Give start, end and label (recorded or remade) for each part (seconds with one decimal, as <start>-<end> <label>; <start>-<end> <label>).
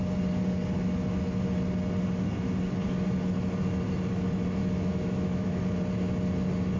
0.0-4.6 recorded; 4.6-5.6 remade; 5.6-6.8 recorded